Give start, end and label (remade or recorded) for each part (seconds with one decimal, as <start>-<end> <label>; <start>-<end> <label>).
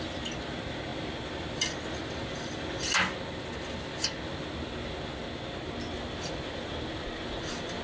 0.0-7.8 recorded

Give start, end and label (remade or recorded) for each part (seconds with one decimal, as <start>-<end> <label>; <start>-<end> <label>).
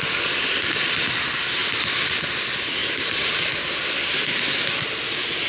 0.0-2.8 recorded; 2.8-3.3 remade; 3.3-5.5 recorded